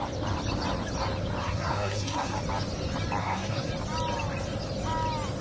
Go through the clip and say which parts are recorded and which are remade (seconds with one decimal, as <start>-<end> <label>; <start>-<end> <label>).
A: 0.0-1.4 recorded; 1.4-2.4 remade; 2.4-3.2 recorded; 3.2-3.7 remade; 3.7-5.4 recorded